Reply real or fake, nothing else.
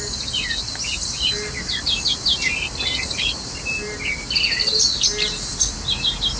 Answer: real